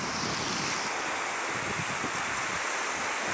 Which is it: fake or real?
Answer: real